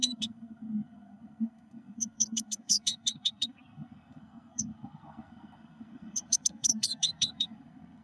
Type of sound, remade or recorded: remade